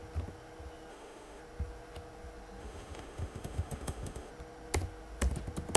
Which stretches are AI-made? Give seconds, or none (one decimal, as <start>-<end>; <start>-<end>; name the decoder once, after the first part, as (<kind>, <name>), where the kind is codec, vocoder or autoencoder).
0.9-1.4 (autoencoder, DAC-VAE); 2.6-4.3